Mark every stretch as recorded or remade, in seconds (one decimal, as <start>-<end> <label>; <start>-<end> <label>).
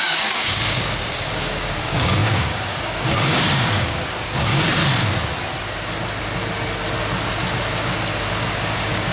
0.0-4.8 remade; 4.8-8.3 recorded; 8.3-9.1 remade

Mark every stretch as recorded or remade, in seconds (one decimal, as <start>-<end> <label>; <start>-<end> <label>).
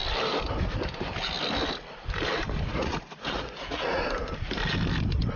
0.0-2.7 recorded; 2.7-4.0 remade; 4.0-5.4 recorded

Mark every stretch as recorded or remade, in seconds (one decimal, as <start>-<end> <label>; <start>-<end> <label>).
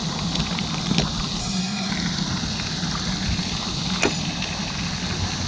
0.0-1.4 recorded; 1.4-1.9 remade; 1.9-5.5 recorded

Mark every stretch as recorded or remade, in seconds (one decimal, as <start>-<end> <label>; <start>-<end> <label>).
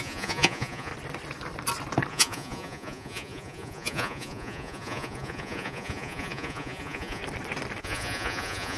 0.0-0.9 remade; 0.9-2.1 recorded; 2.1-7.2 remade; 7.2-7.8 recorded; 7.8-8.8 remade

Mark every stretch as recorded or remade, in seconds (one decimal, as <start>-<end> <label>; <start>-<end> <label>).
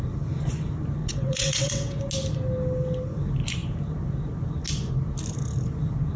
0.0-1.0 recorded; 1.0-2.0 remade; 2.0-6.2 recorded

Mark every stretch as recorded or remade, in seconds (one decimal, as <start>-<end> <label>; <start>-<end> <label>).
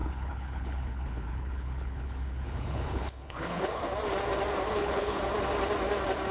0.0-3.8 remade; 3.8-4.7 recorded; 4.7-5.2 remade; 5.2-6.3 recorded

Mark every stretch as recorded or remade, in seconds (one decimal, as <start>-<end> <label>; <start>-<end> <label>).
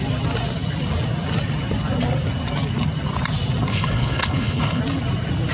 0.0-3.7 recorded; 3.7-4.8 remade; 4.8-5.5 recorded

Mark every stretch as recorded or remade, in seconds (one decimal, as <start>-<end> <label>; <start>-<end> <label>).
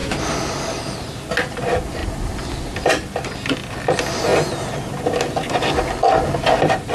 0.0-6.9 recorded